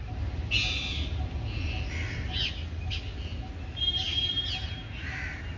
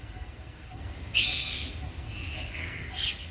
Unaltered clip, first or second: first